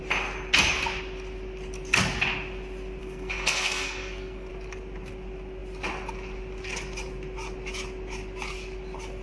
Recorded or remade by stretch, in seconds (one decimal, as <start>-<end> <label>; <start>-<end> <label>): 0.0-3.0 recorded; 3.0-4.5 remade; 4.5-9.2 recorded